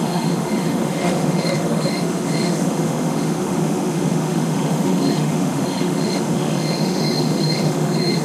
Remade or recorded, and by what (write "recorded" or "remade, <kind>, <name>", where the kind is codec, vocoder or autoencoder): remade, autoencoder, DAC-VAE